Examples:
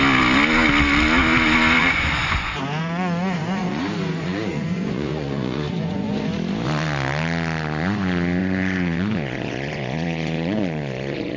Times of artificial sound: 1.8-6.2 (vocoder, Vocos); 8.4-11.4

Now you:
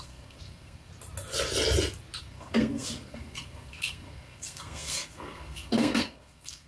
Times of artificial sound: 0.0-0.9 (codec, SNAC); 2.2-6.7

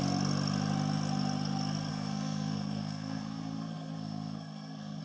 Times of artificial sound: 1.9-5.0 (codec, SNAC)